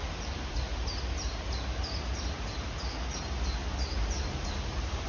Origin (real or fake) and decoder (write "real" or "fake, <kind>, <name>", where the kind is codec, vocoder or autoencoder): real